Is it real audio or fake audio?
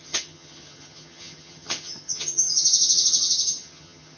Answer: fake